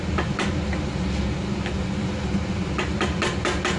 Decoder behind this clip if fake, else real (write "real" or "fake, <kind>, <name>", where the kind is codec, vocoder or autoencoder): real